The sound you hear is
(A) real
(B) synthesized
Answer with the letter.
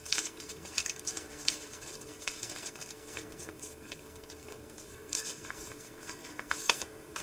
B